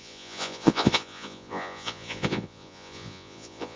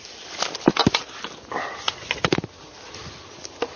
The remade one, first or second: first